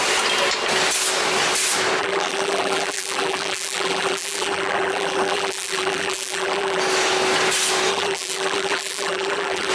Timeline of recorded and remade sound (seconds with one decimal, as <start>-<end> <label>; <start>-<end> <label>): 0.0-2.0 recorded; 2.0-6.8 remade; 6.8-7.9 recorded; 7.9-9.7 remade